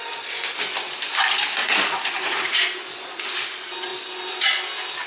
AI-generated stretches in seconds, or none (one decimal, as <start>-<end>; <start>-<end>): 1.6-2.5